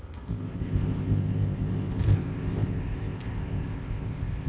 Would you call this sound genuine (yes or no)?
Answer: no